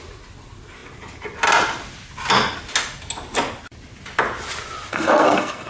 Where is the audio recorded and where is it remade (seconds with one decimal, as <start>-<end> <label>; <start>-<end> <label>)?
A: 0.0-4.9 recorded; 4.9-5.7 remade